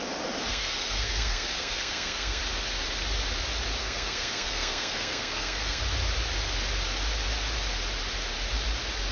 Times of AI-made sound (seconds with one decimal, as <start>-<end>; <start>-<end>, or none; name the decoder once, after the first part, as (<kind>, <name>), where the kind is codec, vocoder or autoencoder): 0.5-2.4 (codec, SNAC); 3.8-5.8